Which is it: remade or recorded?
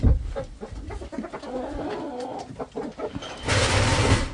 recorded